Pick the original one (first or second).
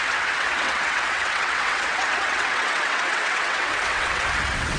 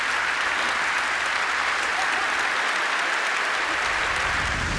second